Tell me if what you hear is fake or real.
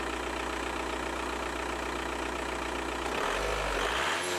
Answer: real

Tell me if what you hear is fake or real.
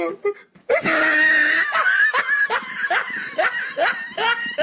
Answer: real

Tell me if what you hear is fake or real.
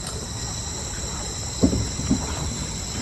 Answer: real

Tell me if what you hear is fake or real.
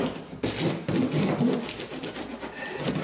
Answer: real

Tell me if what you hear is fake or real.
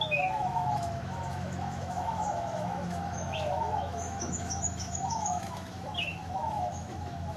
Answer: fake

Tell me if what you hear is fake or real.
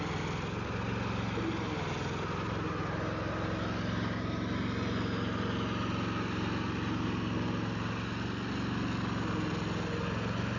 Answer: real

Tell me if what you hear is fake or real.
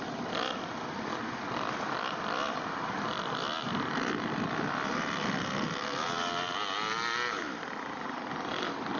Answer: real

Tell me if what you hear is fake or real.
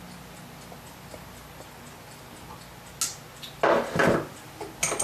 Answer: real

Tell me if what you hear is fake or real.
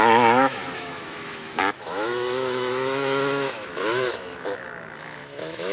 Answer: fake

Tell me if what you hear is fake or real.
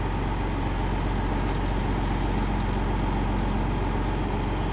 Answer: real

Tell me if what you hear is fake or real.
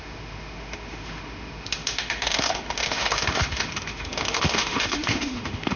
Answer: fake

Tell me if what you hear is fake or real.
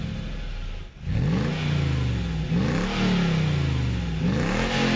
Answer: real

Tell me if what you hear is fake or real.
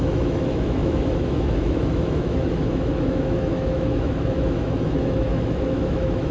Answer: fake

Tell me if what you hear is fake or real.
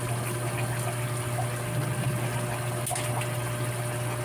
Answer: real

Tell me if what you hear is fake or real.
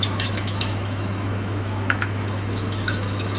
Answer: fake